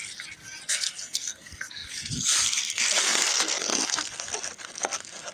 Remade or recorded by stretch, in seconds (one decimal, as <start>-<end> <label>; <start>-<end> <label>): 0.0-0.7 recorded; 0.7-5.3 remade